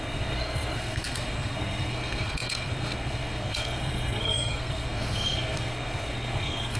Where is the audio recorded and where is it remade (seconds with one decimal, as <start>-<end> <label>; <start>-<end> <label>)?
0.0-6.8 remade